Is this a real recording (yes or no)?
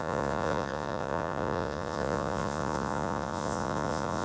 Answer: no